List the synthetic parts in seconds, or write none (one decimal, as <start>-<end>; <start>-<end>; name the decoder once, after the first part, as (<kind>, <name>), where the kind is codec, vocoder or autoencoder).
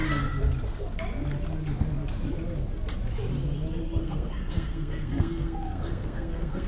4.0-6.7 (codec, SNAC)